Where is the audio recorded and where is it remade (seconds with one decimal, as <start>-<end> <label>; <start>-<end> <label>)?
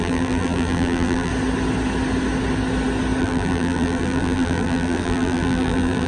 0.0-1.3 remade; 1.3-3.2 recorded; 3.2-6.1 remade